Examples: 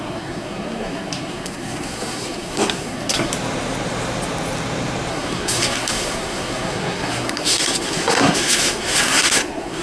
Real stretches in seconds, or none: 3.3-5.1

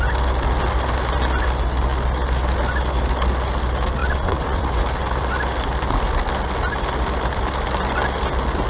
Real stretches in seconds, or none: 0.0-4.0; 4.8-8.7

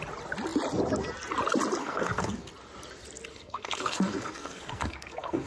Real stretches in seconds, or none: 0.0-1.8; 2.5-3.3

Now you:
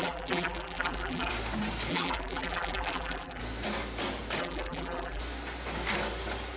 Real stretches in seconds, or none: 1.3-1.9; 3.4-4.4; 5.2-6.6